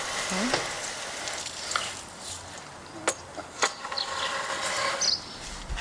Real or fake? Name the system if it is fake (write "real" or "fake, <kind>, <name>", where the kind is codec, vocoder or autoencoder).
real